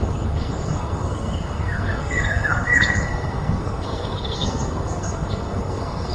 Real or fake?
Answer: fake